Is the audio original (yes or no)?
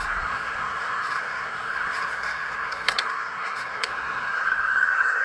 no